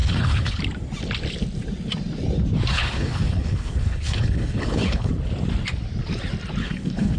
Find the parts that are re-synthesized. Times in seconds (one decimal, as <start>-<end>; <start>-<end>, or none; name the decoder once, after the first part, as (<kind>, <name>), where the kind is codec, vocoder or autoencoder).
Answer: 0.0-0.6 (codec, HILCodec); 2.7-5.1; 6.6-7.2